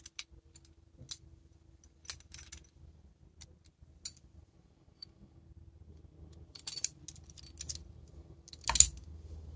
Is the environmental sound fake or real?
real